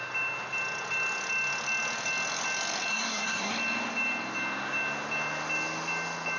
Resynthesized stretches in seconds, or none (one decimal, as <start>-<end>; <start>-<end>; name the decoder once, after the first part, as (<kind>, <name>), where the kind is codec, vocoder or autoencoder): 2.9-3.5 (codec, SNAC)